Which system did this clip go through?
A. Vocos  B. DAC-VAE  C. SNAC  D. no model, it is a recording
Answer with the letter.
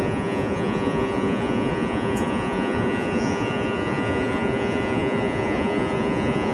A